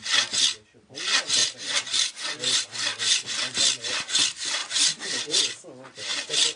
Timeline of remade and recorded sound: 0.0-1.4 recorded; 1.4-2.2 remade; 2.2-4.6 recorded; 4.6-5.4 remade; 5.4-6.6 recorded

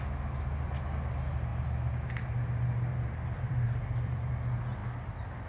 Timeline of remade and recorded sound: 0.0-2.9 recorded; 2.9-4.3 remade; 4.3-5.5 recorded